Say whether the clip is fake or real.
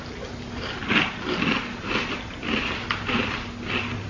real